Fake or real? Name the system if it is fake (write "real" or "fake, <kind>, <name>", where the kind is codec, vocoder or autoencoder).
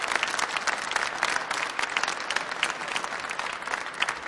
real